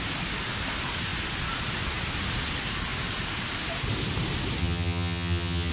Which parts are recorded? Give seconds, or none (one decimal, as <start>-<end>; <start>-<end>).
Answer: 0.0-4.6